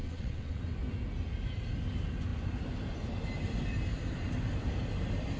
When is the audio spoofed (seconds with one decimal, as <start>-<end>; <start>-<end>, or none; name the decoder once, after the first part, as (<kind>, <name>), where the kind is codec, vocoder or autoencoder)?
0.0-0.6 (vocoder, WaveNeXt)